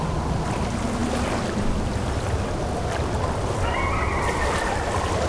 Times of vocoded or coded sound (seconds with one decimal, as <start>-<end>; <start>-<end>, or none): none